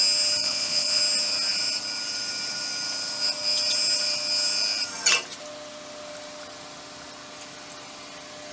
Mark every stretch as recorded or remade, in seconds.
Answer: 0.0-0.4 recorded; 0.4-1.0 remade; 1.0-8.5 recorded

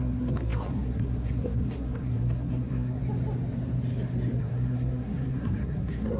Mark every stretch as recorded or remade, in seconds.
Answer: 0.0-3.0 remade; 3.0-4.4 recorded; 4.4-6.2 remade

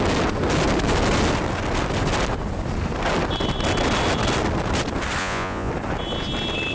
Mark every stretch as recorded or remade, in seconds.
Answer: 0.0-5.2 recorded; 5.2-5.7 remade; 5.7-6.7 recorded

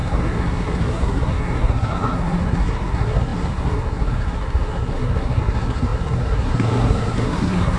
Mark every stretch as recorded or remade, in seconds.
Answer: 0.0-7.8 remade

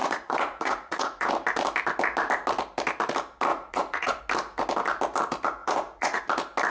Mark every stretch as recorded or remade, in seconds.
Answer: 0.0-1.3 remade; 1.3-3.5 recorded; 3.5-4.2 remade; 4.2-5.6 recorded; 5.6-6.2 remade; 6.2-6.7 recorded

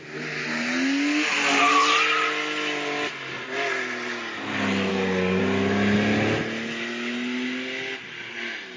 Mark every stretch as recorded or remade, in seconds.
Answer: 0.0-4.9 recorded; 4.9-5.4 remade; 5.4-8.8 recorded

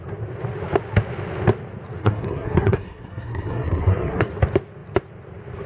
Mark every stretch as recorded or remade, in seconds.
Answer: 0.0-2.0 recorded; 2.0-4.3 remade; 4.3-5.7 recorded